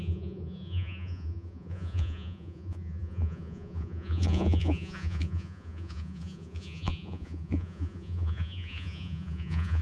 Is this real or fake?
fake